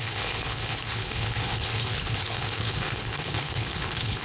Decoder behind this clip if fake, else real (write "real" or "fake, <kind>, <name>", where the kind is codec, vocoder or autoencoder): fake, codec, HILCodec